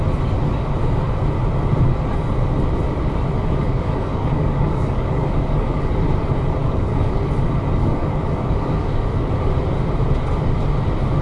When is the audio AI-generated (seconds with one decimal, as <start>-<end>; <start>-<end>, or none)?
3.6-5.9; 6.6-7.2; 7.8-9.3